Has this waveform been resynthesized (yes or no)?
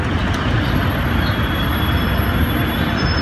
no